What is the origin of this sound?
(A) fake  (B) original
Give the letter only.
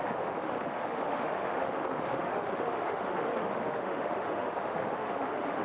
A